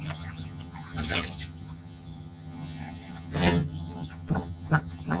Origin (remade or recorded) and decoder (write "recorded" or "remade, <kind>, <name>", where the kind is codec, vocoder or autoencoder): remade, vocoder, HiFi-GAN